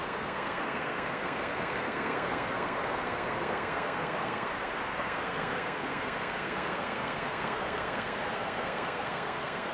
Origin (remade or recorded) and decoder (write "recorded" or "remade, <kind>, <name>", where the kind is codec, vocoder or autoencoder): remade, codec, SNAC